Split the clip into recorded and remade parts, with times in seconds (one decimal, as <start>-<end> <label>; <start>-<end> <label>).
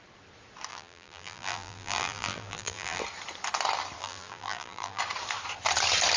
0.0-0.7 recorded; 0.7-3.0 remade; 3.0-4.0 recorded; 4.0-5.0 remade; 5.0-6.2 recorded